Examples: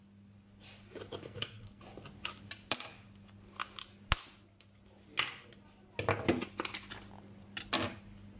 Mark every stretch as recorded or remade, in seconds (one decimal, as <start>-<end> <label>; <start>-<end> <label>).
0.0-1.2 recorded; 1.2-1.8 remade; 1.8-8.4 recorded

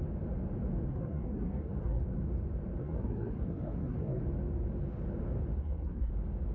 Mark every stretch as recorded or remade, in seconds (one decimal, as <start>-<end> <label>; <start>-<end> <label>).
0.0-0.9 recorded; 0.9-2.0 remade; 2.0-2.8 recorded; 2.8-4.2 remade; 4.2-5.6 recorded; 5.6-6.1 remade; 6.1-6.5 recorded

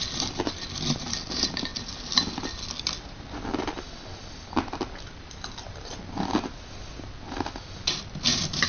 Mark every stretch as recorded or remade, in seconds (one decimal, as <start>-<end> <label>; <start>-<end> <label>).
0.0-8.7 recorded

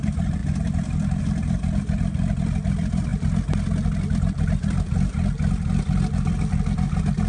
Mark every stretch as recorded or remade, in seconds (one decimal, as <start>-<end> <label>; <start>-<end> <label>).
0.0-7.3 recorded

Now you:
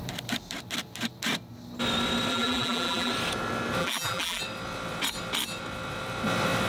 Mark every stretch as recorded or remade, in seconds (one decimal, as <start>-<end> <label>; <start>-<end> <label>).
0.0-2.3 recorded; 2.3-3.1 remade; 3.1-3.8 recorded; 3.8-4.4 remade; 4.4-6.7 recorded